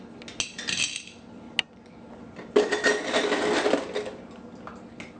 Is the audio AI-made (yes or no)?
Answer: no